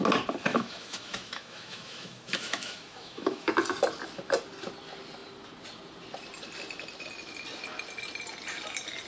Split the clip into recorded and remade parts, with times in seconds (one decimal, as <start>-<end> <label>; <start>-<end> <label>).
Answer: 0.0-0.5 recorded; 0.5-3.5 remade; 3.5-9.1 recorded